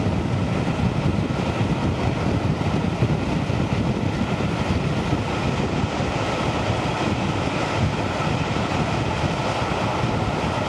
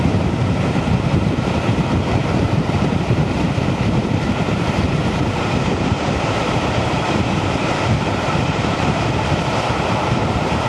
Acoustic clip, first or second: first